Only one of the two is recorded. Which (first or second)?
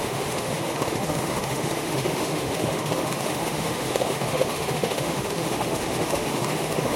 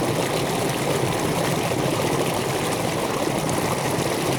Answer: second